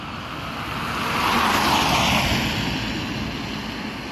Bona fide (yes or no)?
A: yes